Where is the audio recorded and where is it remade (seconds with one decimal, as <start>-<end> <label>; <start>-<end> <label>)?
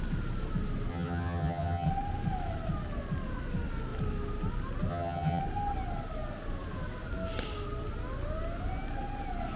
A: 0.0-0.9 recorded; 0.9-1.9 remade; 1.9-4.9 recorded; 4.9-5.4 remade; 5.4-9.6 recorded